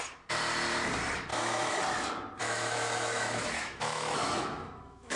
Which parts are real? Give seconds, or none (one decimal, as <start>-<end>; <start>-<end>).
0.0-1.3; 1.8-2.4